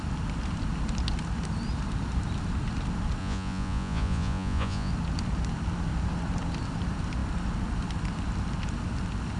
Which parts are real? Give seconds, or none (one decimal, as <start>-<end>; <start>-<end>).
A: 0.0-3.2; 4.9-9.4